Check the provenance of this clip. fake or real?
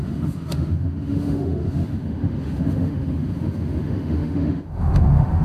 fake